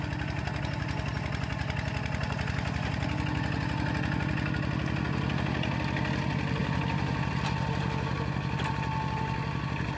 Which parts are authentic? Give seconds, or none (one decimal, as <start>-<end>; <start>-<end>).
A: 0.0-6.6; 7.3-10.0